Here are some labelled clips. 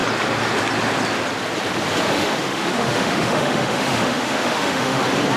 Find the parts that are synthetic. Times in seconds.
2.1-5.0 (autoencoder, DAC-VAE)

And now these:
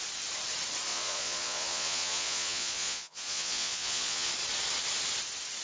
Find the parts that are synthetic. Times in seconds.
0.9-4.3 (vocoder, Vocos)

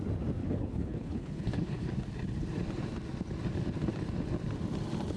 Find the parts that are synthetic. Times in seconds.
0.4-1.9 (codec, HILCodec)

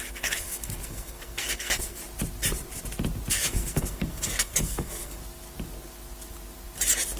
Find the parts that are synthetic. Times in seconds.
0.0-2.0 (codec, SNAC); 3.3-5.2

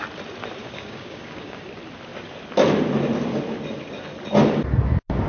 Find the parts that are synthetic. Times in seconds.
0.6-1.6 (codec, DAC)

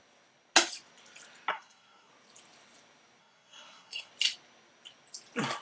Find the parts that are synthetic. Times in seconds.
1.5-2.1 (codec, SNAC); 3.2-4.1

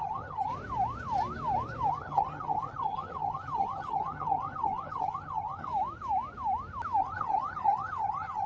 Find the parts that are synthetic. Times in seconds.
0.0-0.5 (vocoder, HiFi-GAN); 1.9-5.7; 7.0-8.5